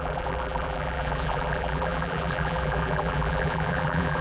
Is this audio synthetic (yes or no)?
yes